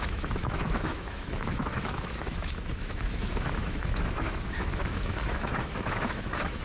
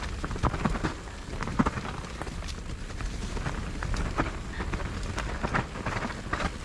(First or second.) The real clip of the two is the second